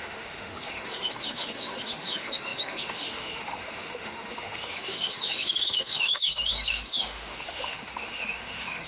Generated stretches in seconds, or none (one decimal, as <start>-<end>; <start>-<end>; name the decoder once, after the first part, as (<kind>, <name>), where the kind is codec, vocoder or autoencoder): 0.0-8.9 (autoencoder, DAC-VAE)